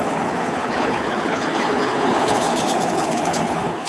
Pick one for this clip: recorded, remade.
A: remade